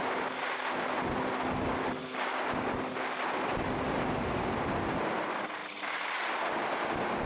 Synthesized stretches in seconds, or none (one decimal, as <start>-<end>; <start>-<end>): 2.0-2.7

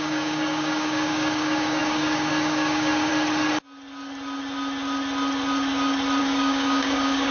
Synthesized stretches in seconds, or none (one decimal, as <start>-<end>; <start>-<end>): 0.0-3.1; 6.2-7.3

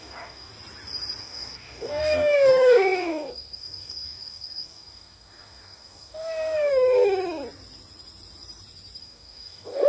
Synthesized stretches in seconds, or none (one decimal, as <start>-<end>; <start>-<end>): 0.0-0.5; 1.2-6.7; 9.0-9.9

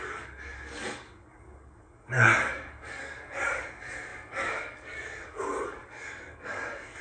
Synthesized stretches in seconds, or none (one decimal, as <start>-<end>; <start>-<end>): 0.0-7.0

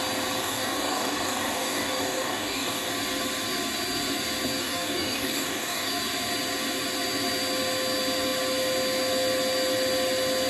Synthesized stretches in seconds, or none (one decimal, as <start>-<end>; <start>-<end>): 0.4-2.9; 4.6-5.9

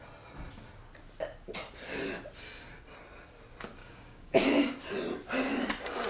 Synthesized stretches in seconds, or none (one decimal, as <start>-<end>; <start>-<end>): 3.8-4.6

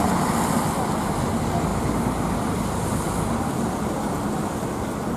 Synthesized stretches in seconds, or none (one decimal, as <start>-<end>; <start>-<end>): none